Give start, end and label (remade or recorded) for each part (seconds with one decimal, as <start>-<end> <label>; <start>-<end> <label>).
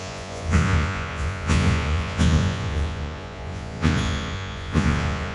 0.0-5.3 remade